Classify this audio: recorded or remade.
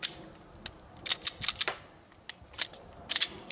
recorded